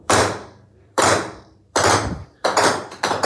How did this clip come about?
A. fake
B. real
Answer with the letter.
A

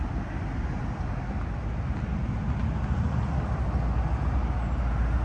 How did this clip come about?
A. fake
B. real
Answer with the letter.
B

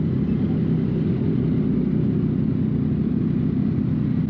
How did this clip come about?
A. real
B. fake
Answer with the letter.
A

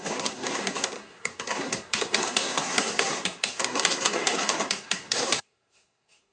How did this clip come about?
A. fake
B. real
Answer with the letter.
A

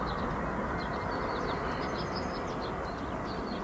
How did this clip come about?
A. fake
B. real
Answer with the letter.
B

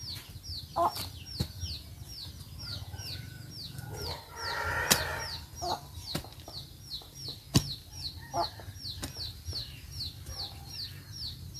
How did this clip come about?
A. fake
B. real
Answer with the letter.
B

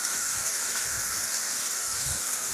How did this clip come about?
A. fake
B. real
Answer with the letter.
A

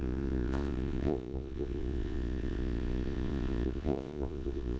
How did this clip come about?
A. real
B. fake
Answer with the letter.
B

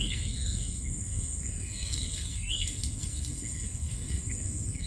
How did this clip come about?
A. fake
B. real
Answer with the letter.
A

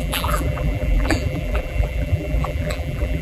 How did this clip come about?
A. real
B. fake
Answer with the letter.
B